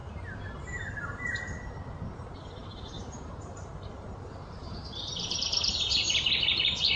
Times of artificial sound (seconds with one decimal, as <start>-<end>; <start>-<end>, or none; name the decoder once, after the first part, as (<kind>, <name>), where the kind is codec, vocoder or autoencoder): 0.0-0.9 (vocoder, BigVGAN v2); 2.6-3.7; 4.3-5.7